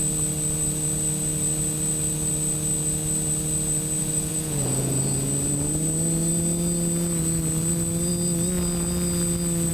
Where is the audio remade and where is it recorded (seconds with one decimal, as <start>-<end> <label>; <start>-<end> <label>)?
0.0-4.0 recorded; 4.0-5.0 remade; 5.0-9.7 recorded